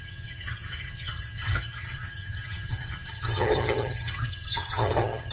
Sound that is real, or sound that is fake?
fake